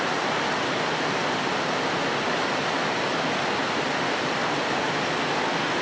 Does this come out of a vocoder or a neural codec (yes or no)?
no